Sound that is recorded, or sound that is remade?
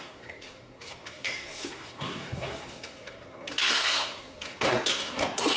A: remade